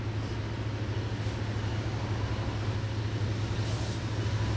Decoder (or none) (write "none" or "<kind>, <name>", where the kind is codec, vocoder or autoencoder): none